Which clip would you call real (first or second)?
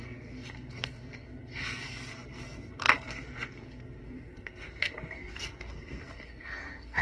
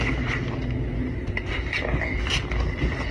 second